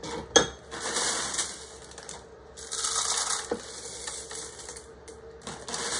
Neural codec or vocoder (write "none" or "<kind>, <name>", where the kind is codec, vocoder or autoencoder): none